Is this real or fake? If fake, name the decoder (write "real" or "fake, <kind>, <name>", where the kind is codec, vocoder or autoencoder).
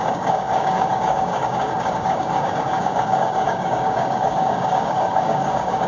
fake, codec, DAC